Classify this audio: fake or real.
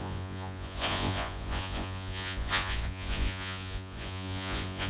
fake